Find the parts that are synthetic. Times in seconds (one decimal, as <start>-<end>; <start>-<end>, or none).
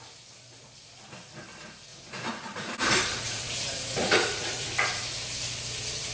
1.9-2.7; 3.1-4.7